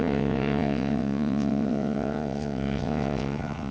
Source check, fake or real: fake